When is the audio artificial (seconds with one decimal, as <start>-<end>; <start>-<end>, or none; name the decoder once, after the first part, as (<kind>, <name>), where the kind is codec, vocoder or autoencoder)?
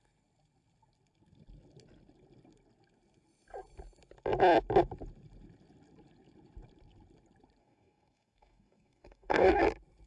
7.6-9.6 (codec, DAC)